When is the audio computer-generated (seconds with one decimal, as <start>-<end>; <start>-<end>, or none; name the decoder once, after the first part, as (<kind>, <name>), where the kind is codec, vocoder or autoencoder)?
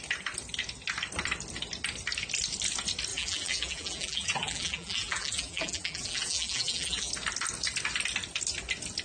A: 3.1-7.1 (vocoder, BigVGAN v2)